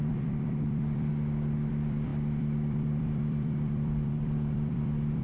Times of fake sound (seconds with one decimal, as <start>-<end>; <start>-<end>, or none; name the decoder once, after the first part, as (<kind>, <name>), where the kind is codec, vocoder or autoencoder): 0.0-1.1 (vocoder, BigVGAN v2); 1.7-5.2